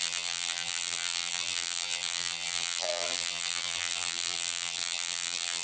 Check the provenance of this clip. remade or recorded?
remade